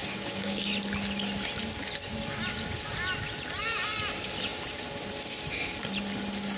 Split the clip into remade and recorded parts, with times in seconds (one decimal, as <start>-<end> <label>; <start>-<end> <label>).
0.0-0.7 remade; 0.7-6.6 recorded